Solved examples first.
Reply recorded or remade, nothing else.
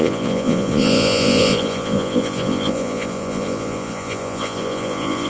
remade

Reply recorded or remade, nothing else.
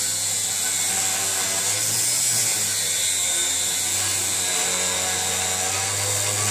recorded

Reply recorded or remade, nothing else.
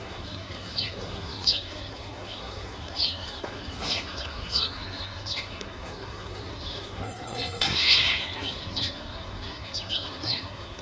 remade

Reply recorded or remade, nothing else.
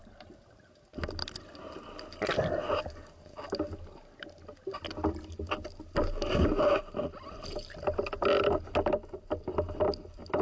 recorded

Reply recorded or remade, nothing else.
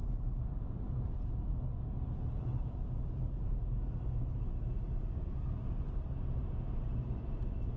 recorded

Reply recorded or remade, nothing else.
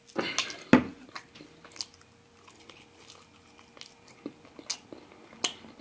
recorded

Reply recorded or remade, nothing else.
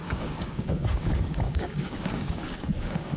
remade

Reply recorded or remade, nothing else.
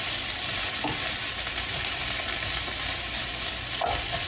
remade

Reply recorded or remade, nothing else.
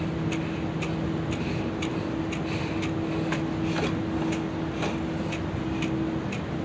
recorded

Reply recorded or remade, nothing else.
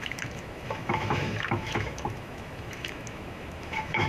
remade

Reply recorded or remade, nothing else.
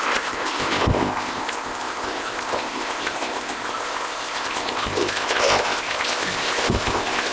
remade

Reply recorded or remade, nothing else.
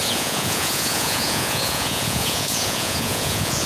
remade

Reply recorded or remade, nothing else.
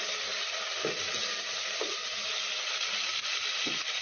recorded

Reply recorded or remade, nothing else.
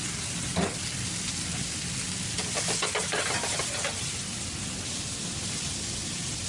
recorded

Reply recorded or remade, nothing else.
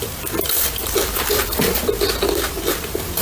remade